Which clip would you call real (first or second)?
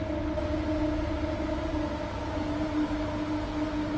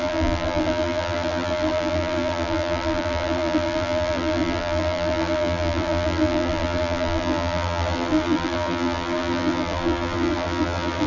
first